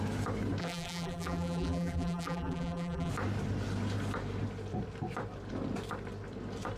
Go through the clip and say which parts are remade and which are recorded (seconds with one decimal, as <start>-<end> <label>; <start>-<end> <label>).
0.0-0.6 recorded; 0.6-3.1 remade; 3.1-6.8 recorded